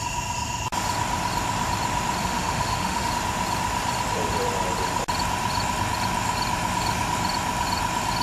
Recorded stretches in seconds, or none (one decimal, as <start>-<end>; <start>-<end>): 0.0-2.2; 3.1-8.2